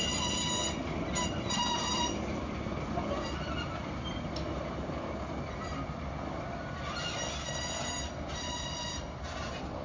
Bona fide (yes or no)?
yes